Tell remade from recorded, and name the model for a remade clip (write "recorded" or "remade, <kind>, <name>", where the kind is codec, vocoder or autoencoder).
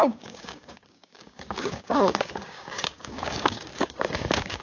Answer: remade, codec, DAC